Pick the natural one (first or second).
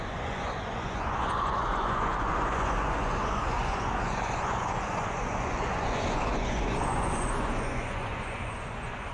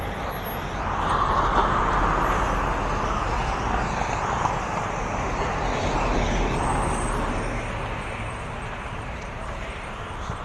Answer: second